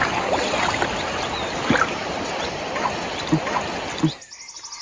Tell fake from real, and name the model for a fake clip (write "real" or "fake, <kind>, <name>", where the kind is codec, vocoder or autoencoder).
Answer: real